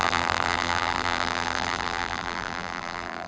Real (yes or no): no